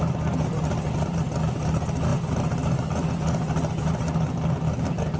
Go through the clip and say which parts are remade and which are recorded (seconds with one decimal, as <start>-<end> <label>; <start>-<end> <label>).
0.0-5.2 recorded